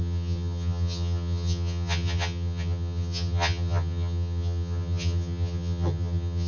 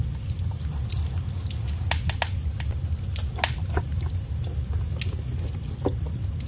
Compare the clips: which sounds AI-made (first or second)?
first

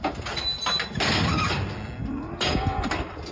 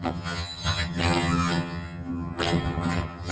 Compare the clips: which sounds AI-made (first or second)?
second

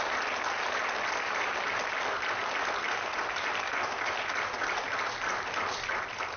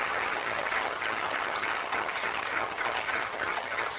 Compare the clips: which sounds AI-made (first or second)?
second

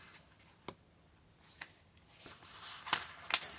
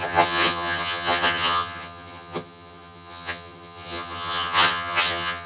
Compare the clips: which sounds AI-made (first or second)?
second